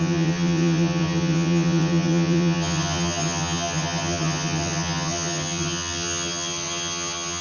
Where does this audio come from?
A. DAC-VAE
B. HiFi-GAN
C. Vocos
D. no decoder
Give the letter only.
B